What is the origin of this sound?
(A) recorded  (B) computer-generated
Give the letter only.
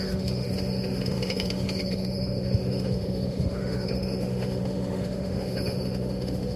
B